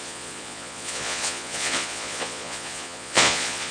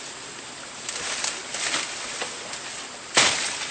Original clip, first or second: second